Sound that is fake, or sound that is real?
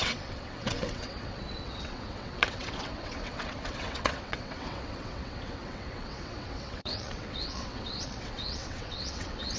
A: fake